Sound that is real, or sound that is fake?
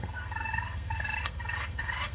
fake